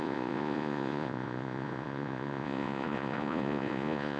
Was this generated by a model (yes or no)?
yes